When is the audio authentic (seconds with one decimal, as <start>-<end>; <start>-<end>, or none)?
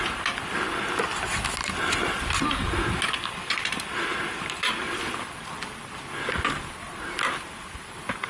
0.0-4.1; 4.8-8.3